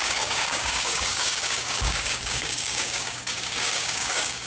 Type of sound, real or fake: fake